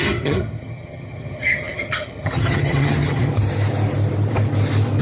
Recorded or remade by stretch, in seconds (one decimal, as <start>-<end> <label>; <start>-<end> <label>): 0.0-3.3 remade; 3.3-5.0 recorded